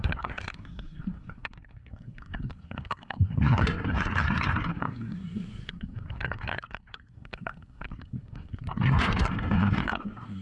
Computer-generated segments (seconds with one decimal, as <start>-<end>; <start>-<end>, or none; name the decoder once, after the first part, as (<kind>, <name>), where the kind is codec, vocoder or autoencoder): 0.0-10.4 (codec, SNAC)